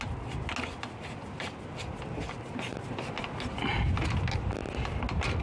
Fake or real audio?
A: real